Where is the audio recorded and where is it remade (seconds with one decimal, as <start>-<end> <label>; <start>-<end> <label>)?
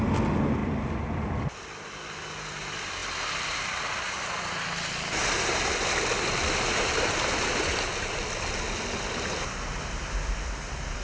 0.0-0.6 recorded; 0.6-1.7 remade; 1.7-11.0 recorded